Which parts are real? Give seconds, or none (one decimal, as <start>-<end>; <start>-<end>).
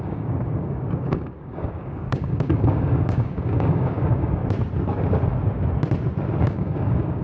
4.4-6.4